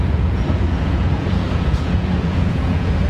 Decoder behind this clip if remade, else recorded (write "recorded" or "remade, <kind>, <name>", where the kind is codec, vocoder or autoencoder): remade, vocoder, Vocos